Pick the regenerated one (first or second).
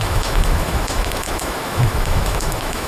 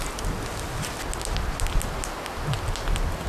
first